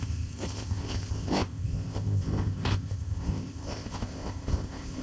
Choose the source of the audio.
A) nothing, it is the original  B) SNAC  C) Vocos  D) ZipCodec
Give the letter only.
D